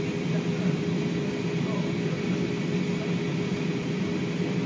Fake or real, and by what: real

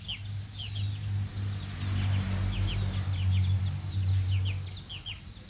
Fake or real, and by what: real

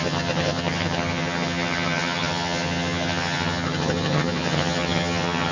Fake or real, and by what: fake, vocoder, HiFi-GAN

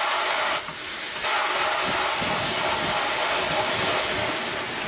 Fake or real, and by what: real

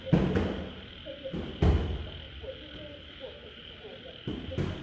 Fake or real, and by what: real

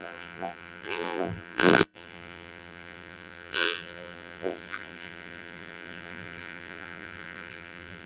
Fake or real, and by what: fake, vocoder, BigVGAN v2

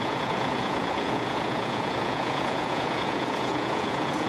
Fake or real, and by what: fake, vocoder, Vocos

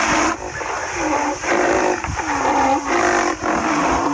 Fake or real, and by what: real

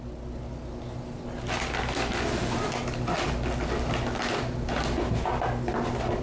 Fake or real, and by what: real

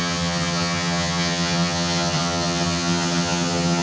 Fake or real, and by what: fake, vocoder, HiFi-GAN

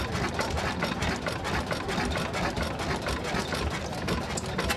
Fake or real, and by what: real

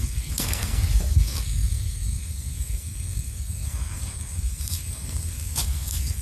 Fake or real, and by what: fake, codec, SNAC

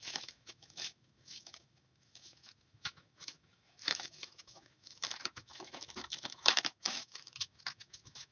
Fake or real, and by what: fake, autoencoder, DAC-VAE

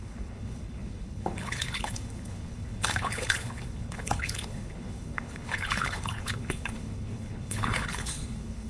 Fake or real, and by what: fake, codec, HILCodec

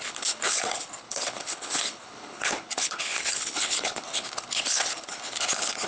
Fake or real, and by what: fake, codec, HILCodec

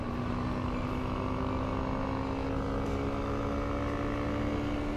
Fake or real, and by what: real